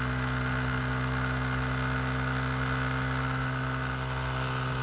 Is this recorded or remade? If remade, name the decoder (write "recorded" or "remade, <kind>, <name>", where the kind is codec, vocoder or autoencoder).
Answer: recorded